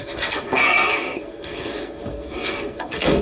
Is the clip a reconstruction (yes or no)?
yes